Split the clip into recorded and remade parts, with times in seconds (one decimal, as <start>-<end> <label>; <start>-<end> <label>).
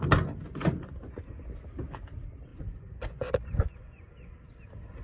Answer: 0.0-2.5 recorded; 2.5-4.3 remade; 4.3-5.0 recorded